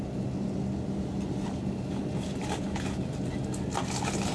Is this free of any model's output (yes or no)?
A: yes